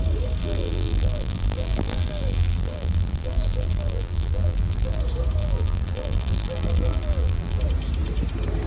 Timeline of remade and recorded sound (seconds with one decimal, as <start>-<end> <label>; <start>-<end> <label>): 0.0-0.4 recorded; 0.4-5.0 remade; 5.0-5.4 recorded; 5.4-7.6 remade; 7.6-8.7 recorded